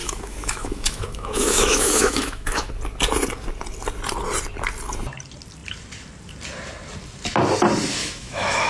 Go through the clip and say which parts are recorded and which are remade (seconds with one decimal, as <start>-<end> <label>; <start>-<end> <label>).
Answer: 0.0-2.7 remade; 2.7-8.0 recorded; 8.0-8.7 remade

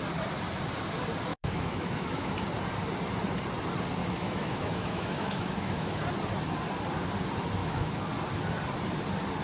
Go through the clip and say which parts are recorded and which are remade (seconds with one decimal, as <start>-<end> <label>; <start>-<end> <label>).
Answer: 0.0-1.3 recorded; 1.3-2.3 remade; 2.3-4.0 recorded; 4.0-6.0 remade; 6.0-7.6 recorded; 7.6-8.1 remade; 8.1-9.4 recorded

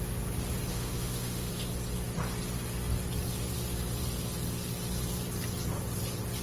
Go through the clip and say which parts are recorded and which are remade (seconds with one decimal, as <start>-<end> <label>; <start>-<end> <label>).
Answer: 0.0-0.7 recorded; 0.7-1.5 remade; 1.5-6.4 recorded

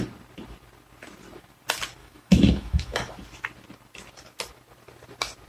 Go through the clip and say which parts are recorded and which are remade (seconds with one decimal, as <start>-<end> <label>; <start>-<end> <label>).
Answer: 0.0-2.0 recorded; 2.0-3.1 remade; 3.1-5.5 recorded

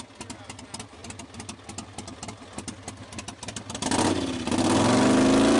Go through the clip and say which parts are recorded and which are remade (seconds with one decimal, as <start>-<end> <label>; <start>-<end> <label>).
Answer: 0.0-5.6 recorded